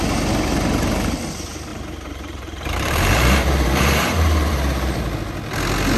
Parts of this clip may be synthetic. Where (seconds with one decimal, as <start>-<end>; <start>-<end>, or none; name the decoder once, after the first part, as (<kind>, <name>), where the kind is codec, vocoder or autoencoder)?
1.7-5.0 (vocoder, BigVGAN v2)